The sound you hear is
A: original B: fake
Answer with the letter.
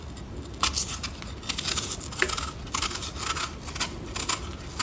A